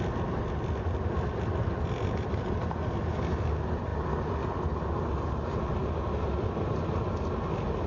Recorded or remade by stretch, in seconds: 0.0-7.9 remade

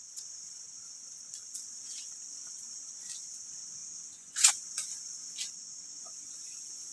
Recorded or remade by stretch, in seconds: 0.0-3.8 recorded; 3.8-4.5 remade; 4.5-6.9 recorded

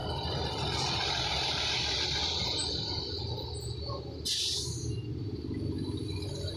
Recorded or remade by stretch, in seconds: 0.0-6.6 recorded

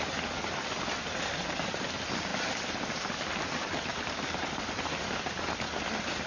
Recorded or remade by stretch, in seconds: 0.0-6.3 recorded

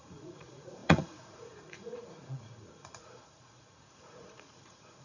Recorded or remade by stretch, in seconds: 0.0-5.0 remade

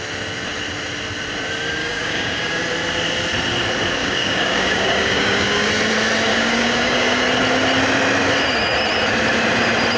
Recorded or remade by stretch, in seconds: 0.0-1.8 recorded; 1.8-2.6 remade; 2.6-4.0 recorded; 4.0-5.7 remade; 5.7-6.3 recorded; 6.3-7.2 remade; 7.2-10.0 recorded